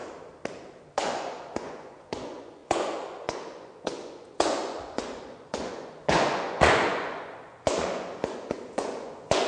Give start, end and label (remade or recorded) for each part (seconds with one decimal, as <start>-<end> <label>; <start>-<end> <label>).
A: 0.0-0.5 recorded; 0.5-9.5 remade